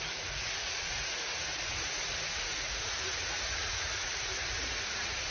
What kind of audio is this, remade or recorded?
remade